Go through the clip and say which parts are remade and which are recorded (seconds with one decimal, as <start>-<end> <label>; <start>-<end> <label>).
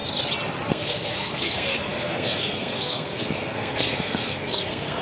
0.0-0.7 recorded; 0.7-5.0 remade